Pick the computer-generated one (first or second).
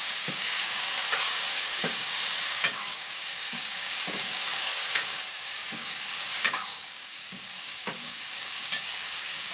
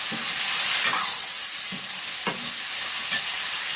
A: first